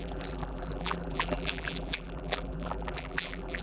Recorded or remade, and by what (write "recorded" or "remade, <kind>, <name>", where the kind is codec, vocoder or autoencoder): remade, vocoder, BigVGAN v2